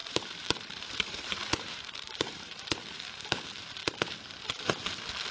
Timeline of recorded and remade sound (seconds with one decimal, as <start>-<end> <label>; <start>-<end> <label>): 0.0-3.8 remade; 3.8-5.3 recorded

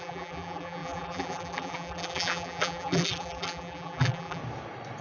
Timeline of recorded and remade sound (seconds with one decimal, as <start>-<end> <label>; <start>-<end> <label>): 0.0-4.4 remade; 4.4-5.0 recorded

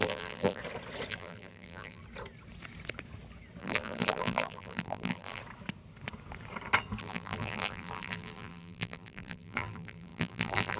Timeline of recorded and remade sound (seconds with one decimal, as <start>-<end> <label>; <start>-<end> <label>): 0.0-0.6 remade; 0.6-1.1 recorded; 1.1-2.0 remade; 2.0-3.6 recorded; 3.6-5.4 remade; 5.4-7.0 recorded; 7.0-10.8 remade

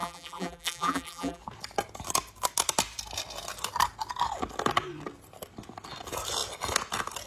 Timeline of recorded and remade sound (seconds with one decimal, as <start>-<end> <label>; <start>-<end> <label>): 0.0-1.4 remade; 1.4-7.3 recorded

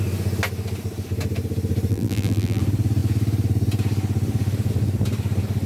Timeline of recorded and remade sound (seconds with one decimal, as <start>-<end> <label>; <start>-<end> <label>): 0.0-1.9 recorded; 1.9-2.6 remade; 2.6-5.7 recorded

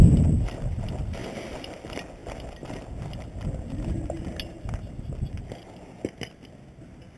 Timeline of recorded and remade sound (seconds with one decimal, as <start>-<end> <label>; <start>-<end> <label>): 0.0-7.2 recorded

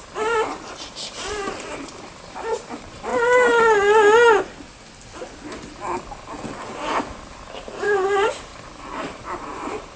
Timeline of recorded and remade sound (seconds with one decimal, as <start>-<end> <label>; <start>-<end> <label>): 0.0-3.1 remade; 3.1-7.8 recorded; 7.8-8.5 remade; 8.5-9.2 recorded; 9.2-10.0 remade

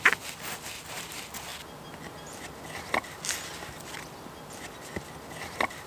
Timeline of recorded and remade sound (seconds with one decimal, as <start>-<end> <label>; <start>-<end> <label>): 0.0-5.9 recorded